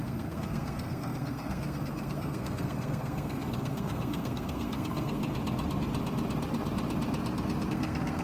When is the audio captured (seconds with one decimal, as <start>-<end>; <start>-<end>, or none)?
5.2-7.7